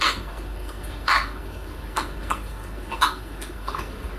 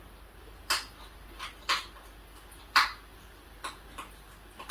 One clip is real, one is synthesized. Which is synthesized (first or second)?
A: first